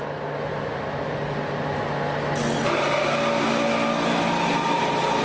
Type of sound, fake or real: real